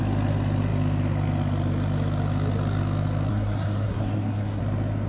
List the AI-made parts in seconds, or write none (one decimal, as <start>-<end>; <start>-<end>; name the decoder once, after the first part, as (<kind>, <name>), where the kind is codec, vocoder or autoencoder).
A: 3.3-4.6 (codec, SNAC)